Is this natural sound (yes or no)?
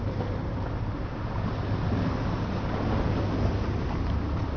yes